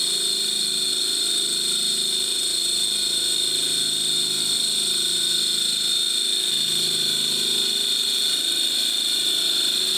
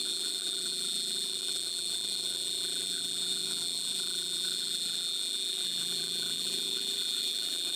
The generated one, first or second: second